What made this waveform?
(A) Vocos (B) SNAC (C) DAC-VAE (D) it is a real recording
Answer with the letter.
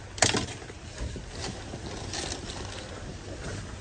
D